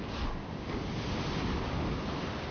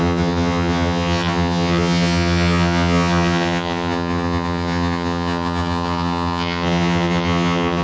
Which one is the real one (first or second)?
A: first